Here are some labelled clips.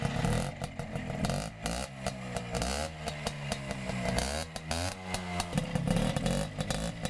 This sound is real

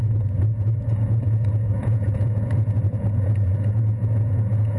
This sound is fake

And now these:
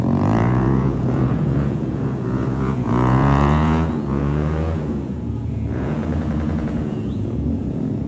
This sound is fake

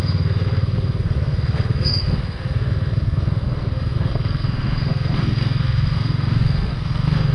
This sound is fake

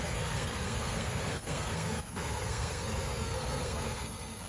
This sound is fake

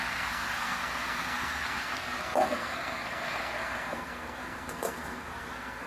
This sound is fake